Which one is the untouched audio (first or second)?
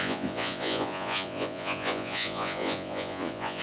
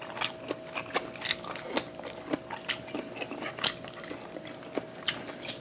second